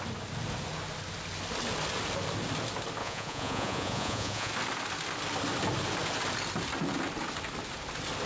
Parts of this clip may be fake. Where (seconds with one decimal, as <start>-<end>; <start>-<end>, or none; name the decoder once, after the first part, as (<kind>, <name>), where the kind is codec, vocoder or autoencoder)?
3.0-4.5 (vocoder, Vocos)